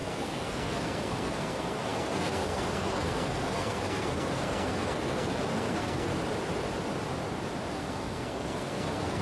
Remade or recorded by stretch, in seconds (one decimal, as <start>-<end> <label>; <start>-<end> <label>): 0.0-6.1 remade; 6.1-7.7 recorded; 7.7-9.2 remade